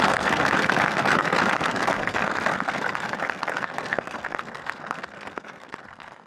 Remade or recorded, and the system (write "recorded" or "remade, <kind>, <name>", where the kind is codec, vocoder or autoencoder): remade, codec, SNAC